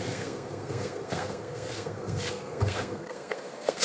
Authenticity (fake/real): fake